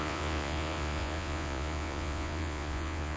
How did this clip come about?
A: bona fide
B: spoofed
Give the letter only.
B